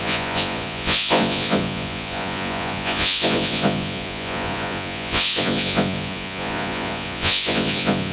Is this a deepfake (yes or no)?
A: yes